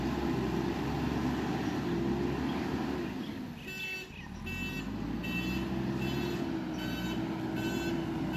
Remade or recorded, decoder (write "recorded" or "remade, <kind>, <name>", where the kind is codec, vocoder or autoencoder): recorded